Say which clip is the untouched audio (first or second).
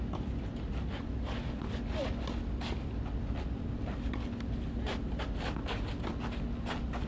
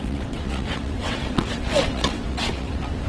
first